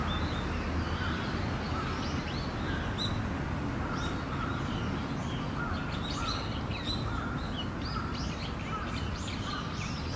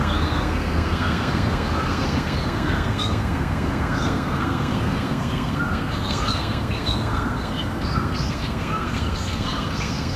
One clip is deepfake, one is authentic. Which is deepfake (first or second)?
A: second